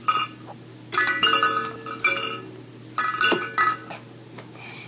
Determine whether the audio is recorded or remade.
recorded